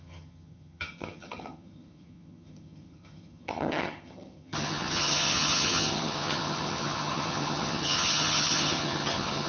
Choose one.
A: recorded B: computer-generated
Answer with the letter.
B